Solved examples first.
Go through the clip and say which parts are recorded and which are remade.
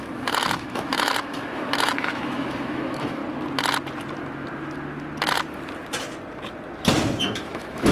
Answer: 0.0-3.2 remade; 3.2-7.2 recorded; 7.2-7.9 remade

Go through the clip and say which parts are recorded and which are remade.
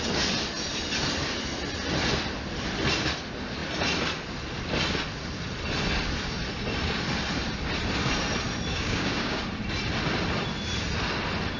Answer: 0.0-8.7 recorded; 8.7-9.4 remade; 9.4-11.6 recorded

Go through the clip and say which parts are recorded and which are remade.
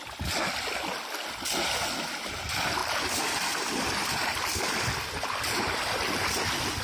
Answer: 0.0-2.8 recorded; 2.8-4.9 remade; 4.9-6.8 recorded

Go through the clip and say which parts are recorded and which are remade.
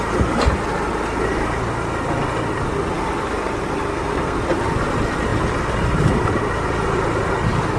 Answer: 0.0-3.9 recorded; 3.9-4.4 remade; 4.4-7.8 recorded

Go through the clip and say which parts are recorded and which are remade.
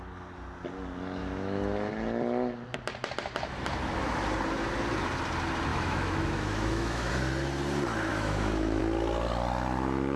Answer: 0.0-1.2 recorded; 1.2-1.9 remade; 1.9-5.7 recorded; 5.7-7.1 remade; 7.1-8.1 recorded; 8.1-8.8 remade; 8.8-10.2 recorded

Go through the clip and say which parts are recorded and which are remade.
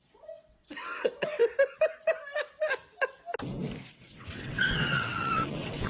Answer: 0.0-1.4 remade; 1.4-3.9 recorded; 3.9-5.9 remade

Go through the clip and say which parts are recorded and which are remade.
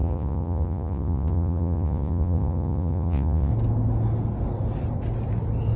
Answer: 0.0-3.5 remade; 3.5-5.8 recorded